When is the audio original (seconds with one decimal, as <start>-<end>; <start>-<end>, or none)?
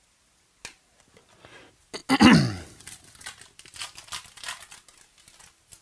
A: 0.0-5.8